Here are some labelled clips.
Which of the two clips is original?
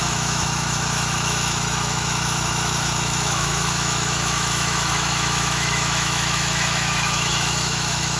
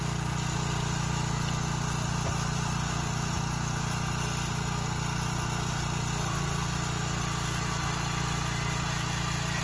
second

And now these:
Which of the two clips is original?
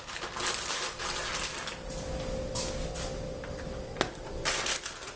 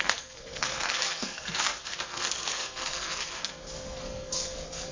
first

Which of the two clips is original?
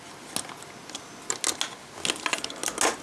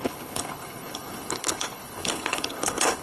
first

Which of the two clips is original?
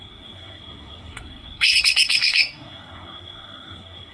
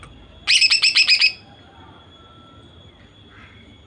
second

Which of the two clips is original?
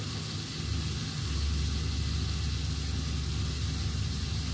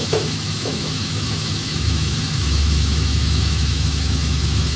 first